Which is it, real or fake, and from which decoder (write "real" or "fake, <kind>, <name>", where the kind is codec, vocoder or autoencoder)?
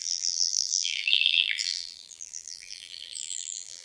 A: fake, vocoder, BigVGAN v2